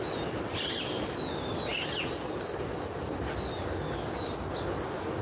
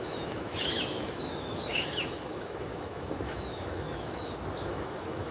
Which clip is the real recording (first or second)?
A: first